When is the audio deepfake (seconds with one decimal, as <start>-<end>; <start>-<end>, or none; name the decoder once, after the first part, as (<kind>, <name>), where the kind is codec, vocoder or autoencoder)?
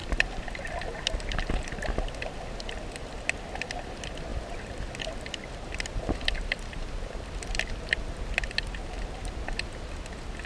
none